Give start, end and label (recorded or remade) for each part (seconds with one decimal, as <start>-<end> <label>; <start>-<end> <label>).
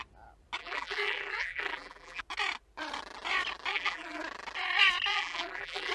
0.0-0.6 recorded; 0.6-2.2 remade; 2.2-3.7 recorded; 3.7-4.2 remade; 4.2-5.1 recorded; 5.1-5.9 remade